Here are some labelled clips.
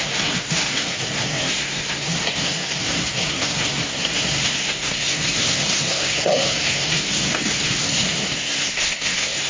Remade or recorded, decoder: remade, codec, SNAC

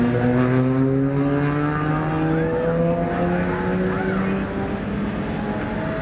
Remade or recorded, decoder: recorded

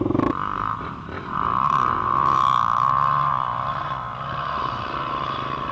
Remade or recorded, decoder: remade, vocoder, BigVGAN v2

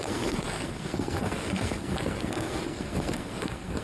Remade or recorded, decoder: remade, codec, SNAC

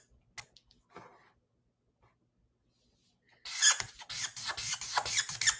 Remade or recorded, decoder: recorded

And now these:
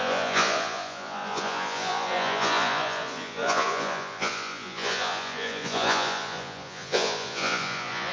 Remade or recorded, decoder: remade, vocoder, Vocos